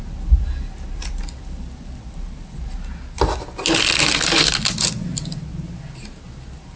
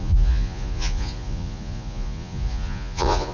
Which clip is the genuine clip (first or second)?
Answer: first